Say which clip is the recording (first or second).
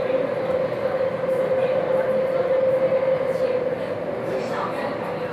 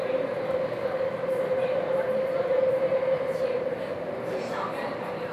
first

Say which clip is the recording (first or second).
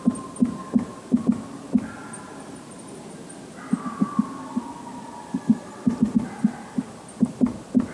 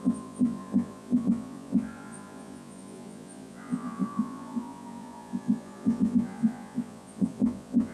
first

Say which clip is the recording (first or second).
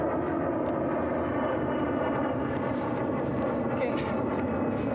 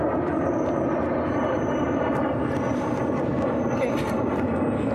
first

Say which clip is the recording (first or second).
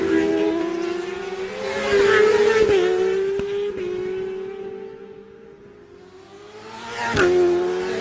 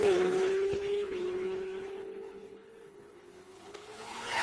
first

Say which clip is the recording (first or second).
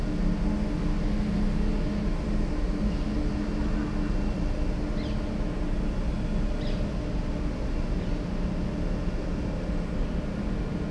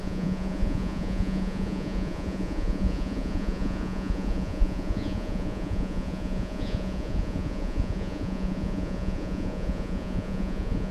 first